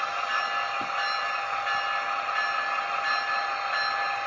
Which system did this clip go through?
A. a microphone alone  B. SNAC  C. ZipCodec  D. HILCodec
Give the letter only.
A